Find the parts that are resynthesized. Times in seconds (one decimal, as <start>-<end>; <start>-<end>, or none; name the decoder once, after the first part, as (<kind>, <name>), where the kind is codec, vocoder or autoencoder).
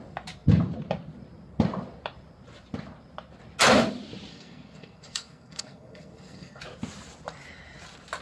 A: 4.3-6.6 (codec, SNAC)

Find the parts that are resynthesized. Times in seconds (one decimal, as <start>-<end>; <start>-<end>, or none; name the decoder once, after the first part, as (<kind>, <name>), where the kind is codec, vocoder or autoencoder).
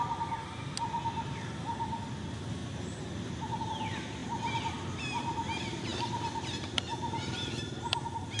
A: none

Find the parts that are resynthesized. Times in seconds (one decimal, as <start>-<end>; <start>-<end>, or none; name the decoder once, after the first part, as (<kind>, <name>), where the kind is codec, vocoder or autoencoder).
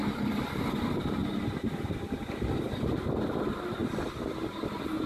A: none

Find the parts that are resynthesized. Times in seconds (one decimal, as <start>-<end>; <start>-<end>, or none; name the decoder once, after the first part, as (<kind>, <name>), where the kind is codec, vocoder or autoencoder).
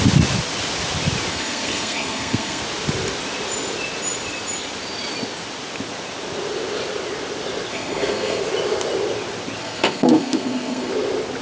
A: 1.3-2.6 (codec, SNAC); 7.7-8.4; 9.6-10.9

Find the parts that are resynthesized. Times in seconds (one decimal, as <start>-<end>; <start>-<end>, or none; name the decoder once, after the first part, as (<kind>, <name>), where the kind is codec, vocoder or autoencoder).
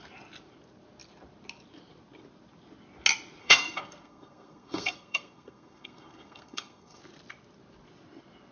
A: 3.4-7.0 (codec, SNAC)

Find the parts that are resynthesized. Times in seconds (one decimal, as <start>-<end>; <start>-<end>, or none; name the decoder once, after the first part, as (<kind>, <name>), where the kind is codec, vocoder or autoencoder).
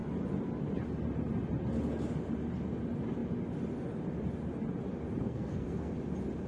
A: 5.2-5.9 (codec, SNAC)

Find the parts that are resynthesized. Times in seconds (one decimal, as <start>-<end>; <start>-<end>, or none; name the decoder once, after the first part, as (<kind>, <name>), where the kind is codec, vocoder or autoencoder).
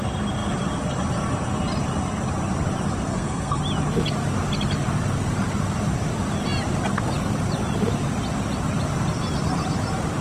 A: 3.1-3.6 (codec, SNAC)